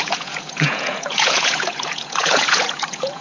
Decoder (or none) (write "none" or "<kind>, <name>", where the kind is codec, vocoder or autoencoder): vocoder, Vocos